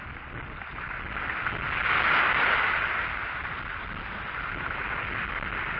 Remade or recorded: recorded